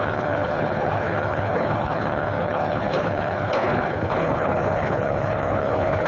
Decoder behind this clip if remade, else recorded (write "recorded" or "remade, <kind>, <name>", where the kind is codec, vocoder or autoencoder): remade, codec, HILCodec